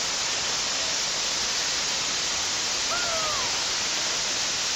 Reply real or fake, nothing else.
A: real